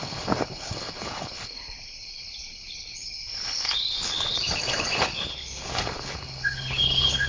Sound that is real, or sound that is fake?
fake